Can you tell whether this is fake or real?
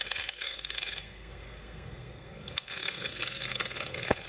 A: fake